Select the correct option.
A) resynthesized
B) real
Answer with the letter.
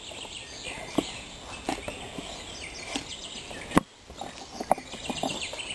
B